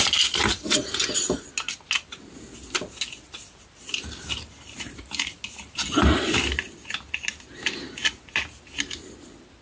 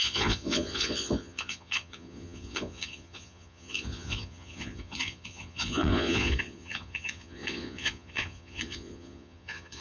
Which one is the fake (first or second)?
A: second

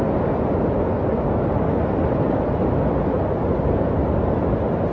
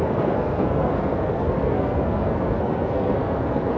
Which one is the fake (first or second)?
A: second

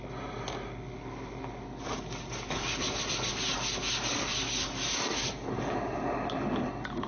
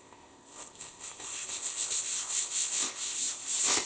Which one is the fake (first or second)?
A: second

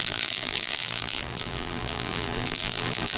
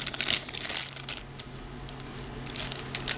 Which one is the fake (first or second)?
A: first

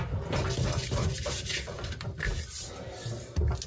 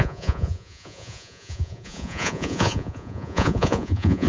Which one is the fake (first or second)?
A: second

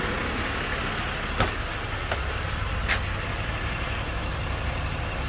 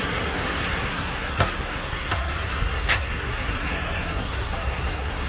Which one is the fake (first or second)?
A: second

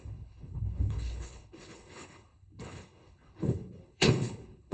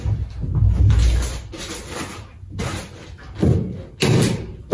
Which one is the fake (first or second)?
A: first